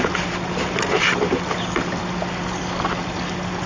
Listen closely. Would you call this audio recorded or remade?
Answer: recorded